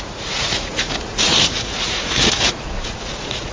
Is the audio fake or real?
fake